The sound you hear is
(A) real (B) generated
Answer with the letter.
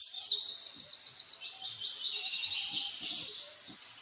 A